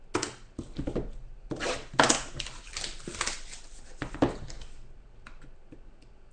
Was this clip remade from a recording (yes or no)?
no